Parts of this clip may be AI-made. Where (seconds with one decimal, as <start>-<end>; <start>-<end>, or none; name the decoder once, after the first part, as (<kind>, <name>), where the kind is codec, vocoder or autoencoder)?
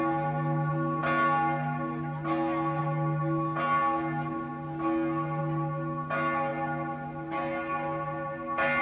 none